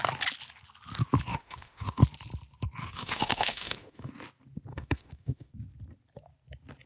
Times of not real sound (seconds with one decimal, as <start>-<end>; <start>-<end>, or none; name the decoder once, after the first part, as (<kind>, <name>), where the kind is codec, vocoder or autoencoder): 1.3-2.0 (autoencoder, DAC-VAE); 2.8-4.1; 4.7-5.5